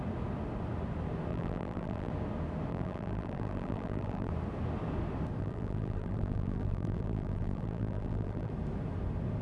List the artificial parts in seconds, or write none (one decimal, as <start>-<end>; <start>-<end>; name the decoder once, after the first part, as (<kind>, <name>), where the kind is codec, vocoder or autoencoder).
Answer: 1.3-2.1 (vocoder, BigVGAN v2); 2.7-4.3; 5.4-8.5